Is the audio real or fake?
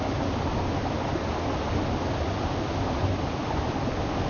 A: real